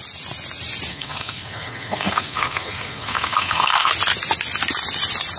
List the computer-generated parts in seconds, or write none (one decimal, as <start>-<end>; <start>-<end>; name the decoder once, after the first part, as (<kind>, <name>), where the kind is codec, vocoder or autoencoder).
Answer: 0.9-3.9 (codec, SNAC)